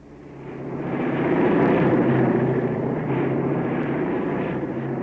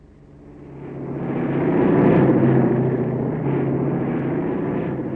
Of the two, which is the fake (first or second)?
first